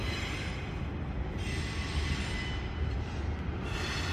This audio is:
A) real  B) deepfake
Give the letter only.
A